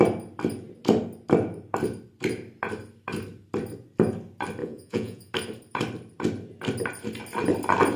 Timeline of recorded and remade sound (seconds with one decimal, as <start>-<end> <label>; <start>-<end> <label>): 0.0-4.6 recorded; 4.6-5.3 remade; 5.3-8.0 recorded